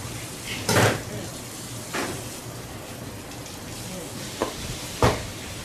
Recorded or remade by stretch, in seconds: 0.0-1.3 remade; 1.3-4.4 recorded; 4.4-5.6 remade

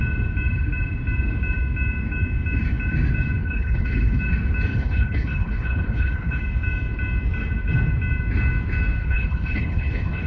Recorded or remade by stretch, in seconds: 0.0-3.4 recorded; 3.4-4.2 remade; 4.2-4.7 recorded; 4.7-6.4 remade; 6.4-9.0 recorded; 9.0-10.3 remade

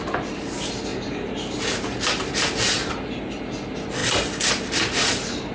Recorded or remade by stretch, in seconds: 0.0-5.5 recorded

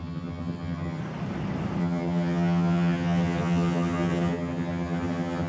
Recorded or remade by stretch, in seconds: 0.0-1.0 remade; 1.0-1.8 recorded; 1.8-5.5 remade

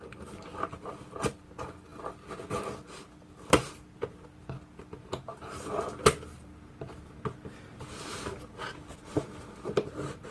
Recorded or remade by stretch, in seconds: 0.0-0.5 recorded; 0.5-1.4 remade; 1.4-5.3 recorded; 5.3-6.7 remade; 6.7-10.3 recorded

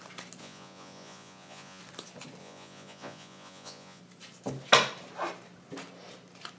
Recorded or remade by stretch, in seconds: 0.0-0.4 recorded; 0.4-1.8 remade; 1.8-2.4 recorded; 2.4-4.0 remade; 4.0-6.6 recorded

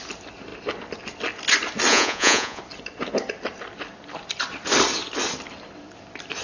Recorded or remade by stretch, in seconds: 0.0-1.9 recorded; 1.9-2.6 remade; 2.6-6.4 recorded